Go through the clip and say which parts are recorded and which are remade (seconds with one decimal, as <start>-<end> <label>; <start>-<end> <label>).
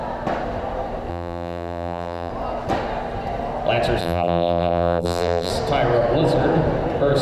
0.0-1.1 recorded; 1.1-2.3 remade; 2.3-4.0 recorded; 4.0-5.5 remade; 5.5-7.2 recorded